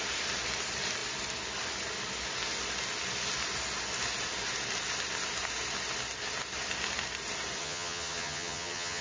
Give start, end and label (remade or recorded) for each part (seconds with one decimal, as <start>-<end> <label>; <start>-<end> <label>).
0.0-7.6 recorded; 7.6-9.0 remade